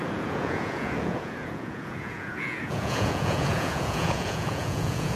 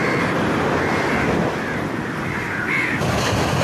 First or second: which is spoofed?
first